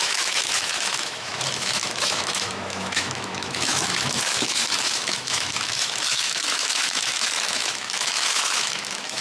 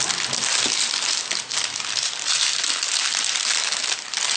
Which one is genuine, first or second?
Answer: second